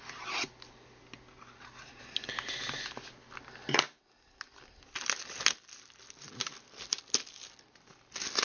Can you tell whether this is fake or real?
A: real